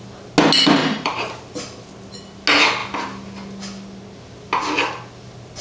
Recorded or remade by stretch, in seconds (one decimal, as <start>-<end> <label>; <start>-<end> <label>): 0.0-0.8 recorded; 0.8-1.4 remade; 1.4-5.6 recorded